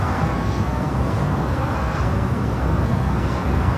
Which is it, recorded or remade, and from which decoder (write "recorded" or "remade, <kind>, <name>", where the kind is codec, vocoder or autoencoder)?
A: remade, codec, SNAC